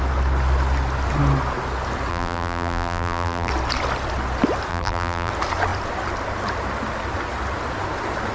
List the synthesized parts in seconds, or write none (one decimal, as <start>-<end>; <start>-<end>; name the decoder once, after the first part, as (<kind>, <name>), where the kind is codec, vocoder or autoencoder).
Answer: 2.1-3.5 (vocoder, BigVGAN v2); 4.7-5.3